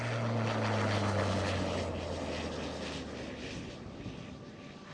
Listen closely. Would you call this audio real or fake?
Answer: real